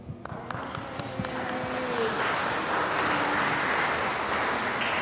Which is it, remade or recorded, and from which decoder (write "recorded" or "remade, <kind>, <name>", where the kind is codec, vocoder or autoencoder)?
recorded